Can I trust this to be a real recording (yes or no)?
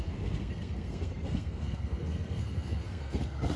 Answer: no